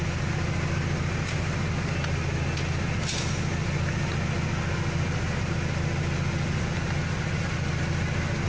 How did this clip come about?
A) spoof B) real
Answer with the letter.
B